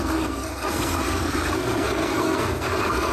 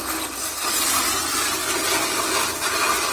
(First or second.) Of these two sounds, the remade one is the first